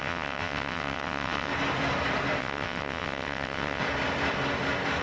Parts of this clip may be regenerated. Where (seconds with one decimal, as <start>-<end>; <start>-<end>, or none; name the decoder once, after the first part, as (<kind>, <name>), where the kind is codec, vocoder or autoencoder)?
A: 0.0-1.5 (vocoder, WaveNeXt); 2.4-3.8